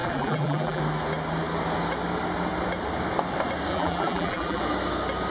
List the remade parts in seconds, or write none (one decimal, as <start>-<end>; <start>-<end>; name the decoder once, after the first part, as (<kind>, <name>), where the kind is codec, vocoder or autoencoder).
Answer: 0.0-0.8 (vocoder, BigVGAN v2); 3.7-4.6